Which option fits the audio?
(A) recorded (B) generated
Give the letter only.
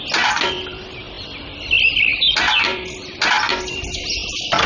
A